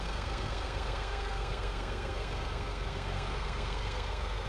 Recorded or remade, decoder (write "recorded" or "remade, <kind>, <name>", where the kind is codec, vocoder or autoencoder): remade, codec, SNAC